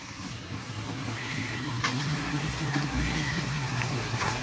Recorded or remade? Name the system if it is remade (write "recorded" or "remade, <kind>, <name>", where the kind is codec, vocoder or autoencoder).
remade, codec, SNAC